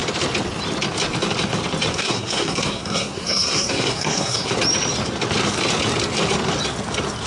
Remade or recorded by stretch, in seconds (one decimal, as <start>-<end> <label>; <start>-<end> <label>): 0.0-1.9 recorded; 1.9-4.5 remade; 4.5-7.3 recorded